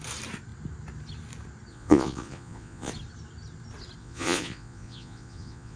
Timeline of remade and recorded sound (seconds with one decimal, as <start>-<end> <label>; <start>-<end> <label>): 0.0-1.7 recorded; 1.7-2.9 remade; 2.9-4.0 recorded; 4.0-5.8 remade